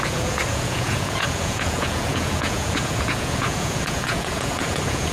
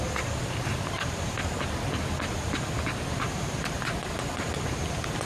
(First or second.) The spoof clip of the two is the first